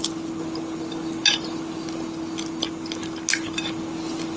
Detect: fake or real real